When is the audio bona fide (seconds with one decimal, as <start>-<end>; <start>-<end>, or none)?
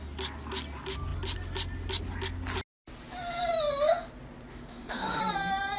0.0-4.5; 5.2-5.8